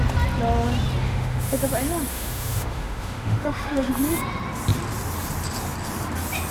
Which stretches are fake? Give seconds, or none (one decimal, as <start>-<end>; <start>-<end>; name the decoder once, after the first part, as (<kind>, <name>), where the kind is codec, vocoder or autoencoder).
1.0-1.6 (autoencoder, DAC-VAE); 2.1-3.9